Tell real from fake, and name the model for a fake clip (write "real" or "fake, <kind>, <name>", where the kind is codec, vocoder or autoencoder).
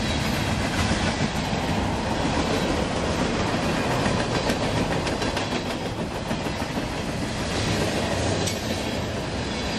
real